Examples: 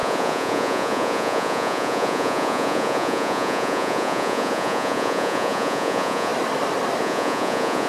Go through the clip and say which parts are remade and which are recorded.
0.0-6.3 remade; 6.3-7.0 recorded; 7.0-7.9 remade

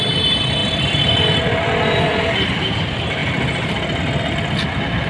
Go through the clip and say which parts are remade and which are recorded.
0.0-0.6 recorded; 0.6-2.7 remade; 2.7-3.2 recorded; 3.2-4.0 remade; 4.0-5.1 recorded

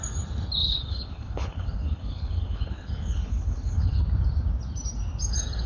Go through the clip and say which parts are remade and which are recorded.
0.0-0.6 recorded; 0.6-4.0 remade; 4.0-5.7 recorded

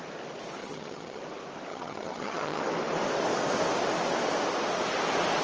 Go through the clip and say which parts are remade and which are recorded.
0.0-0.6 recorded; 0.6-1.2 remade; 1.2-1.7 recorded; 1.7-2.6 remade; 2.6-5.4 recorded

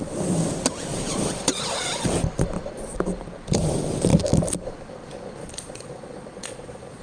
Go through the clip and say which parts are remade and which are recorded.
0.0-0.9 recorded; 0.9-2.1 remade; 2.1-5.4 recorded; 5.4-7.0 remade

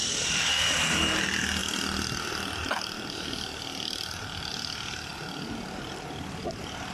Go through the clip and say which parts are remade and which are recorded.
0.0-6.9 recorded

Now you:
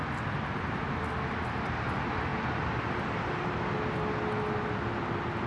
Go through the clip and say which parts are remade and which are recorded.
0.0-5.5 recorded